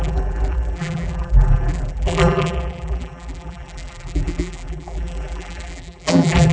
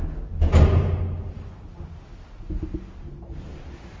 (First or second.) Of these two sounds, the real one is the second